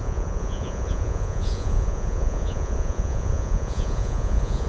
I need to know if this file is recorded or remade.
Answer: remade